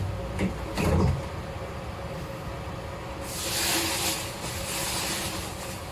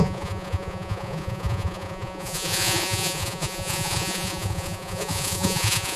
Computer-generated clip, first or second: second